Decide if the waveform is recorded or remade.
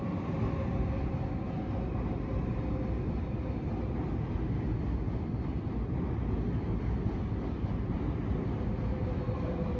recorded